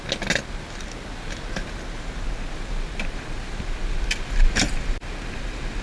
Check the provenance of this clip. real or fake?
real